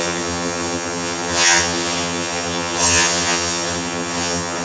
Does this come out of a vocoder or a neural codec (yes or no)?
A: yes